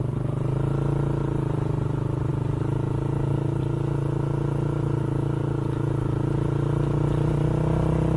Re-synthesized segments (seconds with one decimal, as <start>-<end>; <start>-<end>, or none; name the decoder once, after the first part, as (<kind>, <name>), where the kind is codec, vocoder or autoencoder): none